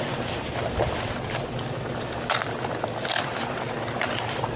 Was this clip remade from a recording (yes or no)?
yes